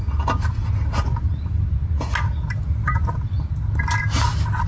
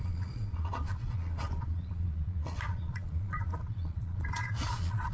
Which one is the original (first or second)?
first